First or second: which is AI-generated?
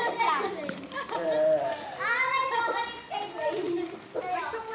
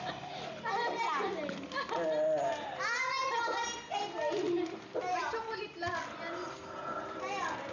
first